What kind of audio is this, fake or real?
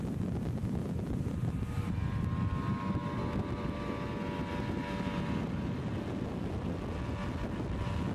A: real